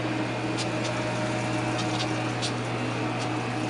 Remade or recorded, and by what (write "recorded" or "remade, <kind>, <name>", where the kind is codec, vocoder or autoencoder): recorded